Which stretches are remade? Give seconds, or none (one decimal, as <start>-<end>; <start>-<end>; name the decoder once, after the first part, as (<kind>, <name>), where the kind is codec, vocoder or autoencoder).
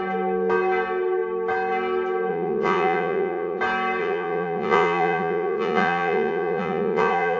2.3-3.6 (vocoder, Vocos); 4.0-7.4